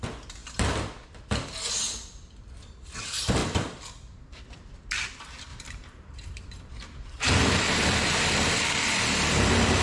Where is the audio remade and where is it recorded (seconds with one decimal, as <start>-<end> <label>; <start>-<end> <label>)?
0.0-5.5 recorded; 5.5-7.3 remade; 7.3-9.8 recorded